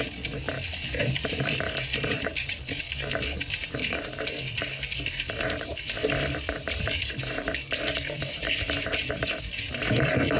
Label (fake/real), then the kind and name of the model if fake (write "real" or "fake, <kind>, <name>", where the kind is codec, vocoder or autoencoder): real